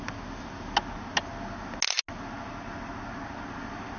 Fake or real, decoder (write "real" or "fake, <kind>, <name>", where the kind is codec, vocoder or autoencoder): real